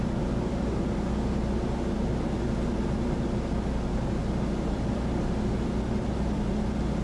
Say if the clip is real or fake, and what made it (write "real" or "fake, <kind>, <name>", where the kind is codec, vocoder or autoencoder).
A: real